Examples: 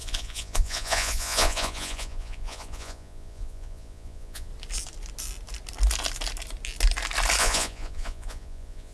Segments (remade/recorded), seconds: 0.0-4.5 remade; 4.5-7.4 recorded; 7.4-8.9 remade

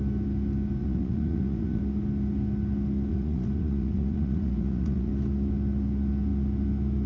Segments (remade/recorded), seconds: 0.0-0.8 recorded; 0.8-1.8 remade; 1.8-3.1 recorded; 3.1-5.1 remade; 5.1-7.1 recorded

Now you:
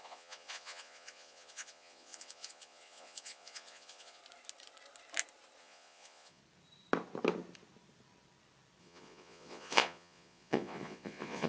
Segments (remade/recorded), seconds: 0.0-4.2 remade; 4.2-5.6 recorded; 5.6-6.4 remade; 6.4-8.8 recorded; 8.8-11.5 remade

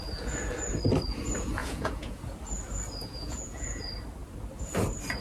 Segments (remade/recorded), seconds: 0.0-1.6 recorded; 1.6-2.2 remade; 2.2-3.0 recorded; 3.0-3.8 remade; 3.8-5.2 recorded

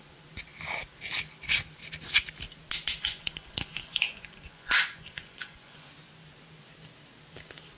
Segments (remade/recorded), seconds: 0.0-3.0 recorded; 3.0-5.9 remade; 5.9-7.8 recorded